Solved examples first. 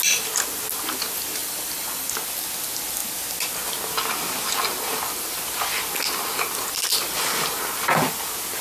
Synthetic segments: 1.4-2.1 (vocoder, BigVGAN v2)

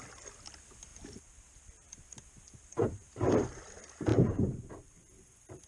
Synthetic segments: 0.9-3.6 (vocoder, BigVGAN v2); 4.1-4.7

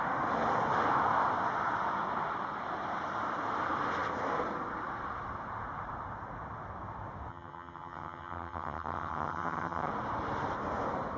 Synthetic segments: 7.3-9.9 (vocoder, HiFi-GAN)

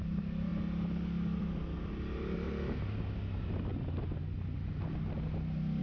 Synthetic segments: none

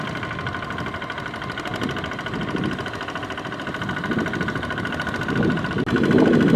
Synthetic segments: none

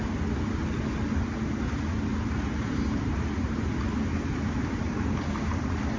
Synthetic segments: 2.1-6.0 (vocoder, BigVGAN v2)

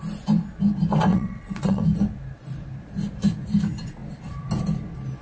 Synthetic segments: 1.1-1.8 (vocoder, WaveNeXt)